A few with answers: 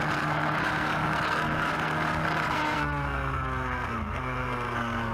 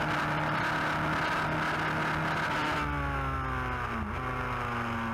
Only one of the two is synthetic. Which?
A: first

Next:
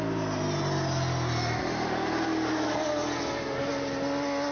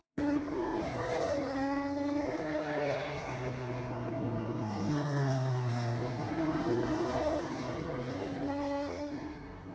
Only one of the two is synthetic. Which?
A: second